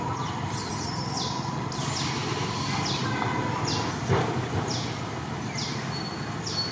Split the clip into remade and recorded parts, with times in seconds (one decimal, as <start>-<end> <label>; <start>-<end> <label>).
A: 0.0-6.7 recorded